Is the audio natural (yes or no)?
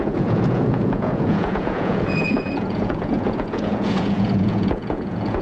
no